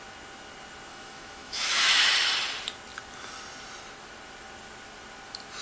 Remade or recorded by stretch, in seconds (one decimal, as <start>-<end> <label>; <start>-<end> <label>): 0.0-0.9 recorded; 0.9-2.1 remade; 2.1-5.6 recorded